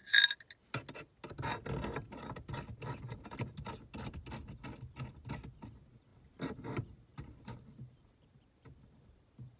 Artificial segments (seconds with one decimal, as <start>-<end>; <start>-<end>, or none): 6.1-9.2